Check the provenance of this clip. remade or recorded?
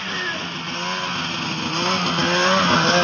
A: recorded